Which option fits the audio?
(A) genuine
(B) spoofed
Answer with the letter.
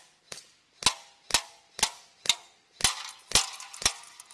A